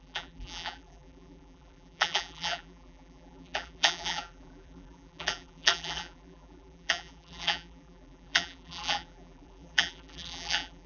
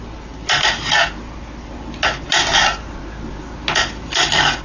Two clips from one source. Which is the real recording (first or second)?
second